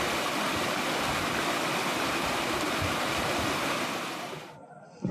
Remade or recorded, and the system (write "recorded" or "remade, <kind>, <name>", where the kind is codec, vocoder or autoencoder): remade, vocoder, BigVGAN v2